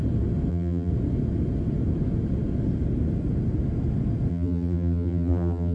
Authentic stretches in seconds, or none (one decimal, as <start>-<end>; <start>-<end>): 0.0-0.5; 0.9-4.3